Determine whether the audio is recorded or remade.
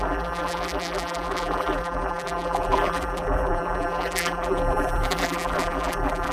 remade